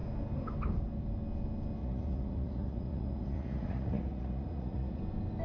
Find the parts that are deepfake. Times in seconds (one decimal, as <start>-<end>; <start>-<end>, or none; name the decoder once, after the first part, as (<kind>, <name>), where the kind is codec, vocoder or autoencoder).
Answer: 1.8-5.0 (vocoder, Vocos)